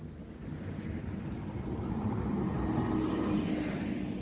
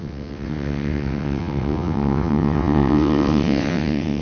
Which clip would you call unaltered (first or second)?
first